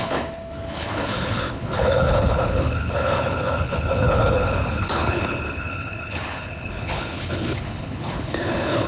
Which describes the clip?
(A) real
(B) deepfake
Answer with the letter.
B